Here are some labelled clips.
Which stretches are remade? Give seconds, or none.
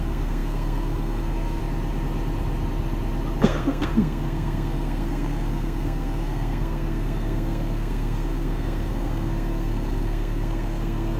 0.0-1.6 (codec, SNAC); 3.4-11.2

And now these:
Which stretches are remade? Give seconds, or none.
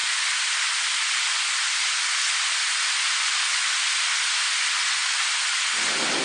none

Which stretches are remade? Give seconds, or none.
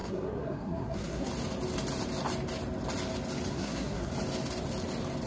0.0-1.3 (codec, SNAC); 3.5-4.1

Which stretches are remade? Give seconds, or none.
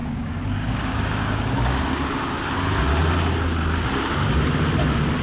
0.0-2.1 (codec, DAC)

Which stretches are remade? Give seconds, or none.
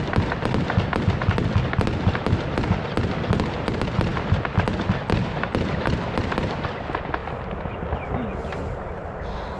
none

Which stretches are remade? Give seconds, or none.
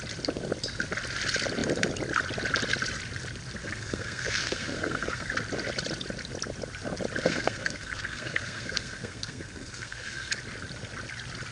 3.6-5.3 (codec, SNAC); 7.2-10.3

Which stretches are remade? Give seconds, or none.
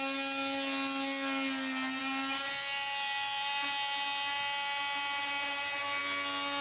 none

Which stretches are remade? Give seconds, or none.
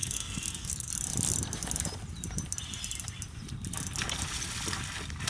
0.0-0.9 (codec, SNAC)